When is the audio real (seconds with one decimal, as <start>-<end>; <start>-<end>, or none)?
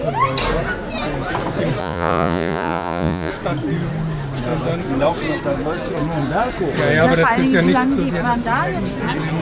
0.0-1.8; 3.3-9.4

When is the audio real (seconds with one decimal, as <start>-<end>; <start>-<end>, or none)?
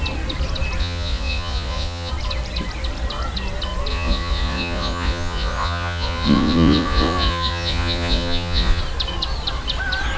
0.0-0.8; 2.1-3.9; 8.8-10.2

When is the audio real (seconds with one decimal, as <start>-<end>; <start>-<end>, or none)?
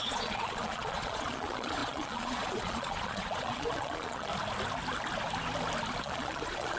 4.3-6.0